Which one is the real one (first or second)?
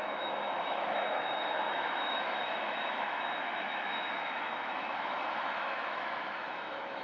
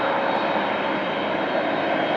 second